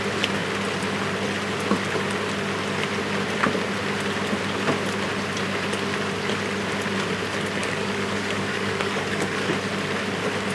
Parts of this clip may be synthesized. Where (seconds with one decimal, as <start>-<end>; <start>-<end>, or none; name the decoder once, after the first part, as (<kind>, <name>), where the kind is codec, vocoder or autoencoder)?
7.6-9.5 (codec, DAC)